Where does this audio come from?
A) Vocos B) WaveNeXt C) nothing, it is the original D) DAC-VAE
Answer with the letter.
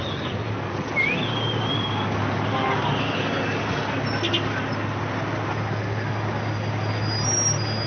C